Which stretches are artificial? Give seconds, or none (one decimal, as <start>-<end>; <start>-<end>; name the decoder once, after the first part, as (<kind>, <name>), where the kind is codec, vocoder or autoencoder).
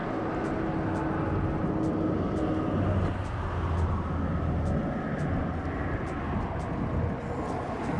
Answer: none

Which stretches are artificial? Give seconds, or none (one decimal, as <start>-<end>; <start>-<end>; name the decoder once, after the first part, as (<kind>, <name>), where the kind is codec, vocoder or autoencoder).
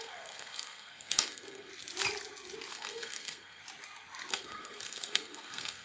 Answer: 0.0-1.7 (codec, SNAC); 2.7-3.6; 4.3-5.8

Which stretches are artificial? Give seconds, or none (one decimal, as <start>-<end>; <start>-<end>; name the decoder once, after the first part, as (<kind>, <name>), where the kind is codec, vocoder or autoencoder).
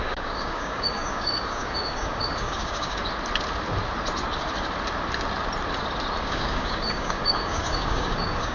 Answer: 0.0-3.0 (codec, DAC); 6.2-8.5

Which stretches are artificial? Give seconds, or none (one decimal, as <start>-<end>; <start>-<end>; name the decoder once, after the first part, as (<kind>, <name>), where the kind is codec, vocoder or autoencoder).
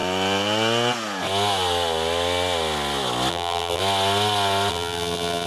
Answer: 3.3-3.8 (vocoder, BigVGAN v2); 4.7-5.5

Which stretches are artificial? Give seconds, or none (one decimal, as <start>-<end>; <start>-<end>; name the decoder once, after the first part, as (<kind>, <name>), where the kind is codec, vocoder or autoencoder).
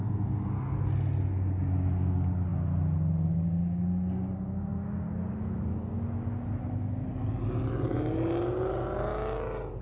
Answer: none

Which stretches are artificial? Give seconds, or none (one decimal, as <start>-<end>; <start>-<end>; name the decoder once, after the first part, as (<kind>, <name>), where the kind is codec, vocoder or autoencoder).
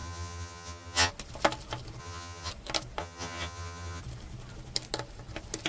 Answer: 0.0-1.1 (vocoder, HiFi-GAN); 2.0-2.5; 3.0-4.0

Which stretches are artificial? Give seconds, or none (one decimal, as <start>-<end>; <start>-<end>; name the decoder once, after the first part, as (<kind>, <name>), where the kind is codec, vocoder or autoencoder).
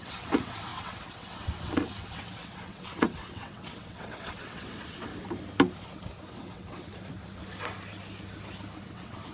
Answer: 0.0-5.1 (vocoder, WaveNeXt); 6.3-6.9; 8.8-9.3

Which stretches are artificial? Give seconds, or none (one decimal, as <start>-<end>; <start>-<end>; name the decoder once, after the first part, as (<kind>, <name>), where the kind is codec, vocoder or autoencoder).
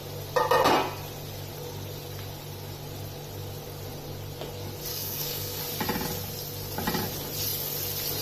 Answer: 4.9-5.6 (codec, DAC)